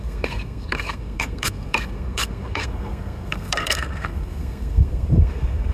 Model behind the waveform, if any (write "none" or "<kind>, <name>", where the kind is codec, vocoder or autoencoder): codec, SNAC